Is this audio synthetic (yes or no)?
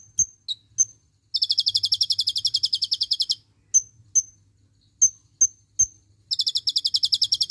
no